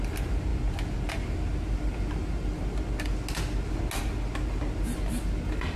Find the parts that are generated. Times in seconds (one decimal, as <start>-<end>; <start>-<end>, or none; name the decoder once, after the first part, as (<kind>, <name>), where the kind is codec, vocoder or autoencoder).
none